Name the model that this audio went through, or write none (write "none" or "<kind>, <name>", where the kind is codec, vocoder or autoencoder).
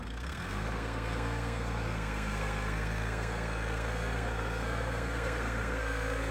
codec, SNAC